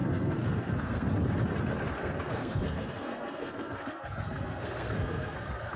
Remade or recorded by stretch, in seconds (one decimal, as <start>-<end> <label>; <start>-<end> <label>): 0.0-1.1 remade; 1.1-2.0 recorded; 2.0-5.8 remade